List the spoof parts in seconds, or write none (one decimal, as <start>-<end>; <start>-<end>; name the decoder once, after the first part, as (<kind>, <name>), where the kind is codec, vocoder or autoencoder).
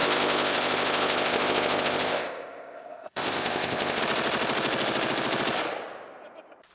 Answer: 0.0-4.0 (codec, ZipCodec)